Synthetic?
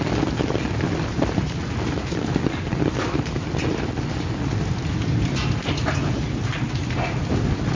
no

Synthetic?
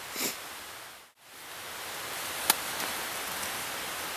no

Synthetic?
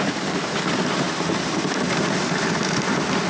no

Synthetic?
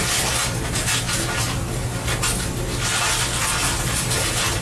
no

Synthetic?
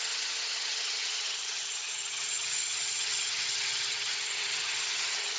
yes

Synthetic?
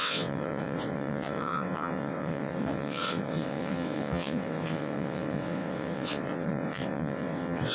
yes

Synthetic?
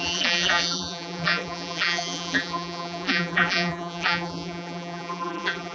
yes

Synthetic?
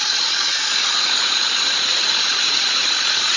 yes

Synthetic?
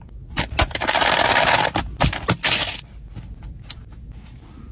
no